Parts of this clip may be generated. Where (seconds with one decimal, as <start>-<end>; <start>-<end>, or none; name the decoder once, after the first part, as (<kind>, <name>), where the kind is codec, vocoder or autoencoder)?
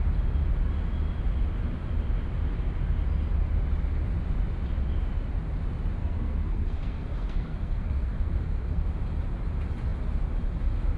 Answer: 6.0-8.9 (codec, SNAC)